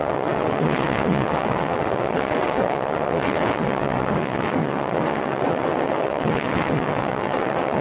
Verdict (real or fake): fake